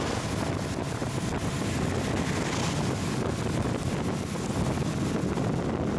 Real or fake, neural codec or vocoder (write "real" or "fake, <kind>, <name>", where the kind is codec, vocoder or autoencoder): real